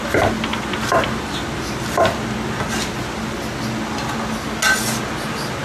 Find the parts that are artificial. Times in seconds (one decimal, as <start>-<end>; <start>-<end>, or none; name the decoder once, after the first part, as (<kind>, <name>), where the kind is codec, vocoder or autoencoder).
none